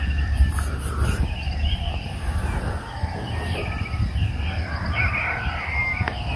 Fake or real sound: real